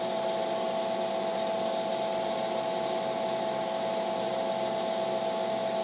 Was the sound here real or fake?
real